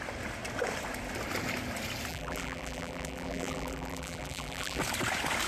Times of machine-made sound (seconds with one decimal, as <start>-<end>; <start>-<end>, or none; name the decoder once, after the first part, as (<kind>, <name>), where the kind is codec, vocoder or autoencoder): 2.1-4.8 (vocoder, BigVGAN v2)